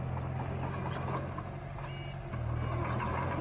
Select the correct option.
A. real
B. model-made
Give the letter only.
A